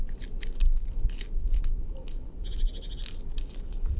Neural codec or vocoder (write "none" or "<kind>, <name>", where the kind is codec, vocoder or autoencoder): none